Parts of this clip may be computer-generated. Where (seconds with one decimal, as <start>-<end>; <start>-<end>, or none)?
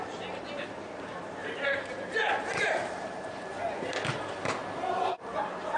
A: 1.4-1.9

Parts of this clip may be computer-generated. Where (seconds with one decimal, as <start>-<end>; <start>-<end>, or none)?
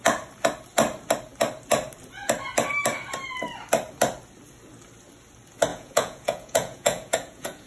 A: 5.7-7.7